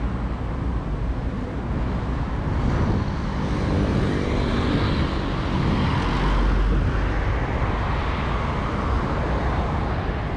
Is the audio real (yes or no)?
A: yes